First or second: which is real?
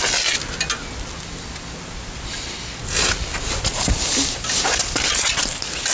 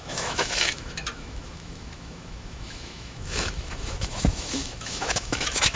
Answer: first